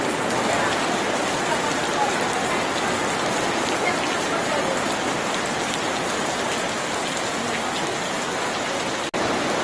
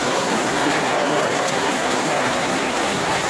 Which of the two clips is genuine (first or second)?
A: first